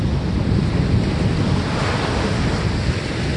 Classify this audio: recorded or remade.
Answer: recorded